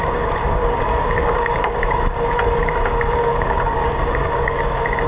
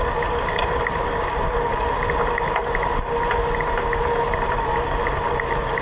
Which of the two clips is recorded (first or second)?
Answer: second